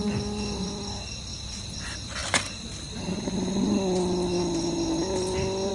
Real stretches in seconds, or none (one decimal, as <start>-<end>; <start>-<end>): 0.0-5.7